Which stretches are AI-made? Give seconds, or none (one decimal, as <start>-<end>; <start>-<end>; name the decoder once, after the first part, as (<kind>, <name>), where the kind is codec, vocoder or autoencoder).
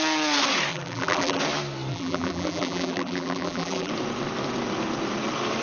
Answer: 0.7-1.4 (vocoder, BigVGAN v2); 1.9-3.9